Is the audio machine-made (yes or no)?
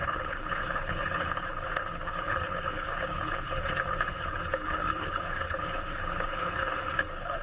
yes